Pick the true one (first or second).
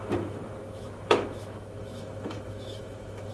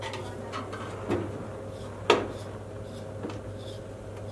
second